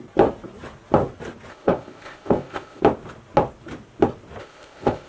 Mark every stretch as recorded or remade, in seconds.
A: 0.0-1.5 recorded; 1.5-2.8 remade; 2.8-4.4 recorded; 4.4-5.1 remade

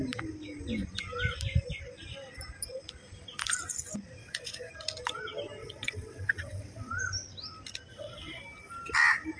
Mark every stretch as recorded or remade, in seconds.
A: 0.0-4.2 recorded; 4.2-4.7 remade; 4.7-5.6 recorded; 5.6-6.9 remade; 6.9-7.9 recorded; 7.9-8.4 remade; 8.4-9.4 recorded

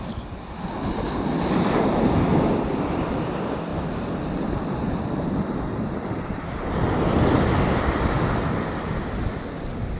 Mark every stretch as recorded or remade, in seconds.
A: 0.0-10.0 recorded

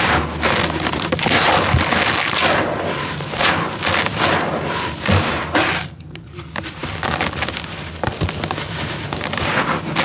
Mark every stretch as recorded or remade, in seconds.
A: 0.0-10.0 recorded

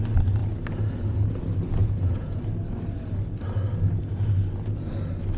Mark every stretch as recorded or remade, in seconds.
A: 0.0-1.8 recorded; 1.8-2.4 remade; 2.4-5.4 recorded